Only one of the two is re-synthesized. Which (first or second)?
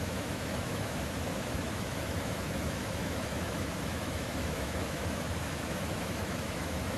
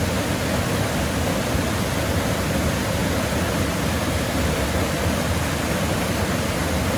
first